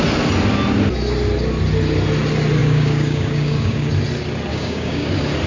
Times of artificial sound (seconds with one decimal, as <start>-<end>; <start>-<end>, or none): 2.6-3.9; 4.5-5.1